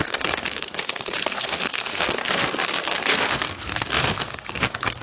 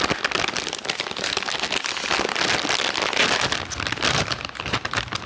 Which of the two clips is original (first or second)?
second